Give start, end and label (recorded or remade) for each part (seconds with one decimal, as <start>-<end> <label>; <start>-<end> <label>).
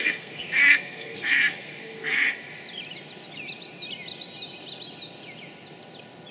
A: 0.0-2.3 remade; 2.3-6.3 recorded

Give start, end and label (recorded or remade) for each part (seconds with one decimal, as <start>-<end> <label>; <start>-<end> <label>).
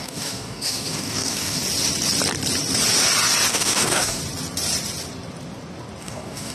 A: 0.0-1.6 remade; 1.6-3.5 recorded; 3.5-4.2 remade; 4.2-6.0 recorded; 6.0-6.5 remade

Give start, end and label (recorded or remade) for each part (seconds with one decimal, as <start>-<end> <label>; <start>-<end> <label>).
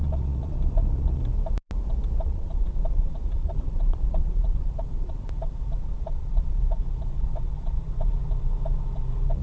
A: 0.0-1.2 remade; 1.2-2.2 recorded; 2.2-9.4 remade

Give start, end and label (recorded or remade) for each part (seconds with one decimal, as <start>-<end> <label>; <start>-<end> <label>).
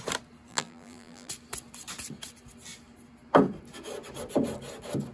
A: 0.0-0.5 recorded; 0.5-1.3 remade; 1.3-5.1 recorded